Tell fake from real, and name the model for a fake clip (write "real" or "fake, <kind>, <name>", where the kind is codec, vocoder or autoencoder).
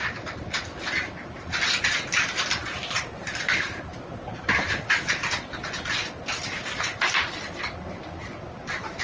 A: real